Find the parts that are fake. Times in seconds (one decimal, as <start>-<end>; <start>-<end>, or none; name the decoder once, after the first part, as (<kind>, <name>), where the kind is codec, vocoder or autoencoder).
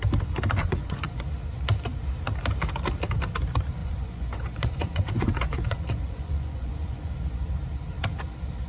0.6-1.3 (vocoder, Vocos); 3.8-7.1